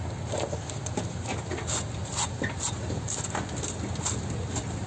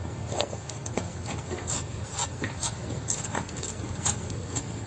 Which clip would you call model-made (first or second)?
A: second